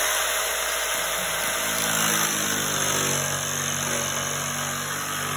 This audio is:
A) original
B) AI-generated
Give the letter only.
A